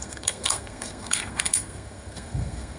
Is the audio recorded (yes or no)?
no